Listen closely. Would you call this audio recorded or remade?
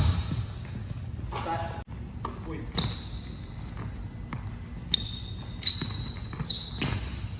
recorded